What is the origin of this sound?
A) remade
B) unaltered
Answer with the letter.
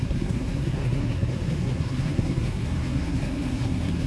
A